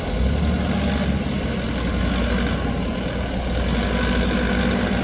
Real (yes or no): yes